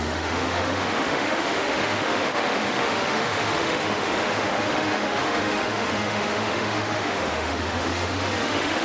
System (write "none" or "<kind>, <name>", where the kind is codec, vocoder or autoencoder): autoencoder, DAC-VAE